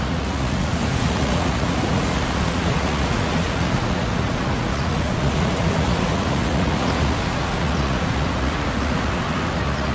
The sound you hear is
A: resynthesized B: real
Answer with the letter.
A